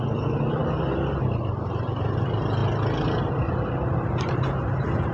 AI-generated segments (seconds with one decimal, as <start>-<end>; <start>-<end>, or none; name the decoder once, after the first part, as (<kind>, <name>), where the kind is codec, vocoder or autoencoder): 0.0-0.6 (vocoder, BigVGAN v2); 1.4-2.6; 3.2-5.1